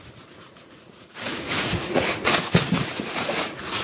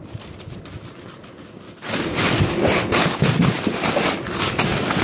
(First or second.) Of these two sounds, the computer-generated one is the first